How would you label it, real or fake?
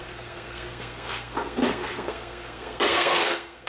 fake